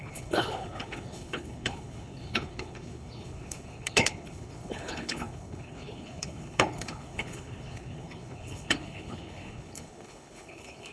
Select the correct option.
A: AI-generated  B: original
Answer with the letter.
A